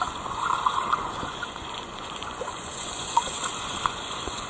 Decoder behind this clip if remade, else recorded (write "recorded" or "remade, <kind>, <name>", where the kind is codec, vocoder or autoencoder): remade, vocoder, Vocos